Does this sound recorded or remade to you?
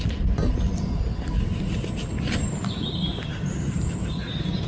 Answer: recorded